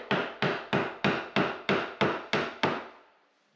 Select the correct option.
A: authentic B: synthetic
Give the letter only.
A